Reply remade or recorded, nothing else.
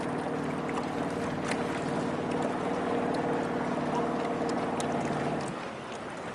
recorded